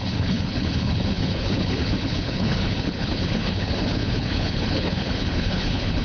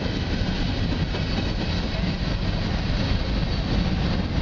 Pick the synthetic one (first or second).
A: first